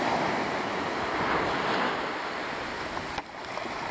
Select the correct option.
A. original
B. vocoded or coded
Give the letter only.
A